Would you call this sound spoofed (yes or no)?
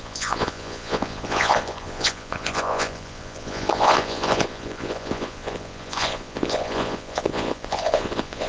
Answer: yes